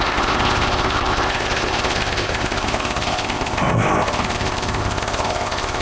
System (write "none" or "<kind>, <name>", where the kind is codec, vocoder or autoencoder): codec, ZipCodec